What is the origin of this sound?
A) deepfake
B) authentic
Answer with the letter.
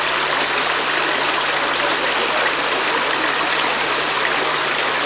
B